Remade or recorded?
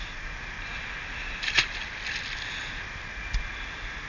recorded